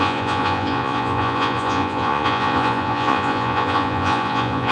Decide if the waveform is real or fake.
fake